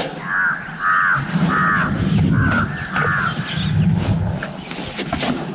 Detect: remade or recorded recorded